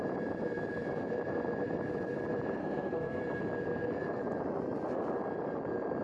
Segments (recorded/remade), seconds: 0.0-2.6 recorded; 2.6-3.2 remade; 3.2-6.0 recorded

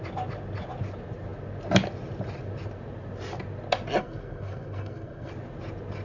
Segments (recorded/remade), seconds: 0.0-4.0 recorded; 4.0-5.3 remade; 5.3-6.0 recorded